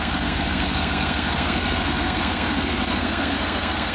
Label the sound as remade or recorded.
remade